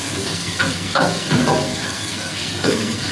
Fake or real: fake